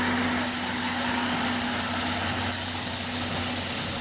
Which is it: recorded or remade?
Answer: recorded